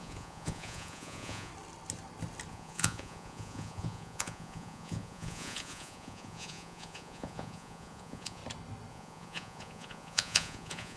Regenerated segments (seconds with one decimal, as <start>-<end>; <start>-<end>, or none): 0.0-1.5; 2.5-8.4; 8.9-11.0

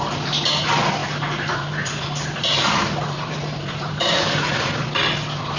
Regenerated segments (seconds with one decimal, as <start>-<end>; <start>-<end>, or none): 1.0-4.4

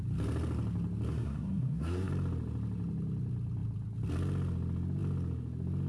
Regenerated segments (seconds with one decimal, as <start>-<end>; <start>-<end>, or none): 1.1-2.1